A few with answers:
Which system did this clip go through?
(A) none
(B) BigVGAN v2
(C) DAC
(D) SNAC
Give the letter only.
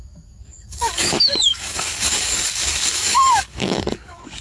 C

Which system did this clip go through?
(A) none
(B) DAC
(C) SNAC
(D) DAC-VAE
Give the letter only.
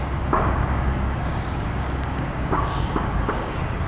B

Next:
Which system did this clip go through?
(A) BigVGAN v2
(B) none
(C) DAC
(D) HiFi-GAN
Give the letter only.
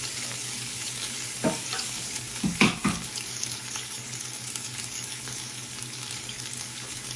C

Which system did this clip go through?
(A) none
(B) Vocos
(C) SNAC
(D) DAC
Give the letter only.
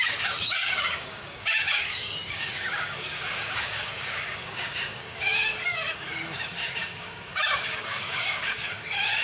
D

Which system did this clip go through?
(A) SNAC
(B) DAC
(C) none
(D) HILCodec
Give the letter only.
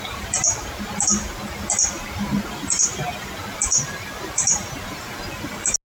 C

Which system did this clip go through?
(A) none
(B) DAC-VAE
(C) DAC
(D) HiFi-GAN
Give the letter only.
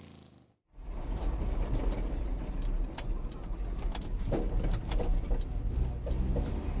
A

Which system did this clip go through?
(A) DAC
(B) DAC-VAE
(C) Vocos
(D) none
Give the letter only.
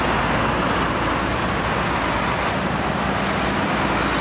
D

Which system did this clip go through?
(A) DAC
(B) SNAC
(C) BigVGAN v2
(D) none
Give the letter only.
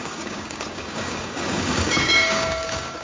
A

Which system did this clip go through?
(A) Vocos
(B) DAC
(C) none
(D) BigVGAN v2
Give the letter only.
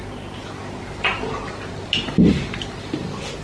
C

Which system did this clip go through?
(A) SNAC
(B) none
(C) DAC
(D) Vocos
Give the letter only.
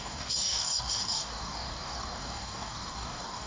C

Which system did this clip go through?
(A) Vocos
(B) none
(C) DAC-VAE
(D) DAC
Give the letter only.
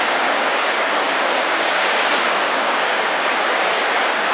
D